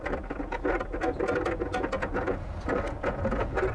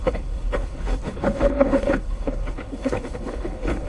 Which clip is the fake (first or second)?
second